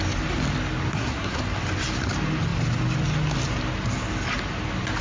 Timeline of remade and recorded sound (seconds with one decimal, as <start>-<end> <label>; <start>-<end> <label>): 0.0-0.9 recorded; 0.9-1.4 remade; 1.4-5.0 recorded